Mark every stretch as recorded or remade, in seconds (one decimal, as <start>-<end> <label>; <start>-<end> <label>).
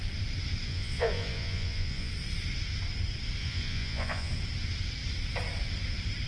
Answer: 0.0-0.7 recorded; 0.7-2.1 remade; 2.1-3.4 recorded; 3.4-4.3 remade; 4.3-6.3 recorded